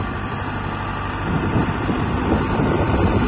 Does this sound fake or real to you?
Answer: real